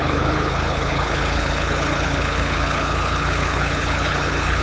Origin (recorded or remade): remade